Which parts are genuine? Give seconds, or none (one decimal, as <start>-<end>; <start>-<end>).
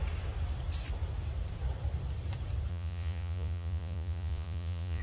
0.0-2.7